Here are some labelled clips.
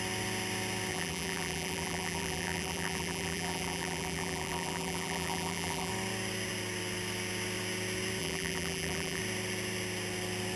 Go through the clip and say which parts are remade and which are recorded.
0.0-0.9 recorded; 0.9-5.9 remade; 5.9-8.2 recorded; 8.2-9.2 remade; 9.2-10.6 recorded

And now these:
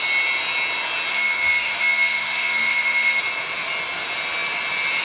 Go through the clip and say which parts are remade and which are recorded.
0.0-1.1 recorded; 1.1-3.2 remade; 3.2-5.0 recorded

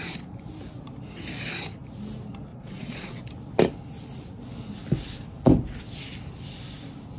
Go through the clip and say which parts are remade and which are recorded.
0.0-2.5 recorded; 2.5-3.2 remade; 3.2-7.2 recorded

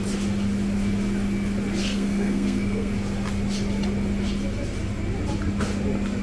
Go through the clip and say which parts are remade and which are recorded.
0.0-1.8 recorded; 1.8-2.9 remade; 2.9-6.2 recorded

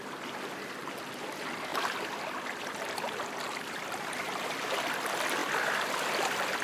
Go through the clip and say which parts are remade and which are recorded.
0.0-1.7 recorded; 1.7-4.2 remade; 4.2-5.4 recorded; 5.4-5.9 remade; 5.9-6.6 recorded

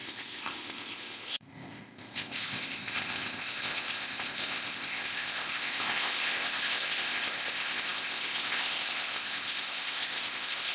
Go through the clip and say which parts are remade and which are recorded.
0.0-10.7 remade

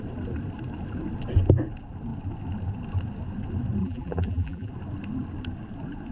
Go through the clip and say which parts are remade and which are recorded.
0.0-3.8 recorded; 3.8-4.7 remade; 4.7-6.1 recorded